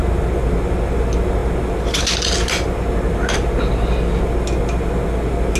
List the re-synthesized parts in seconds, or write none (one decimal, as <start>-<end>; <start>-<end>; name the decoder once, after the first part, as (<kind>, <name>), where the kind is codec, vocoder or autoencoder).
none